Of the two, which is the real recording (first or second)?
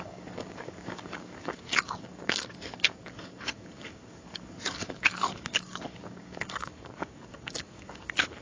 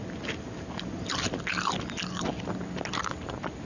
second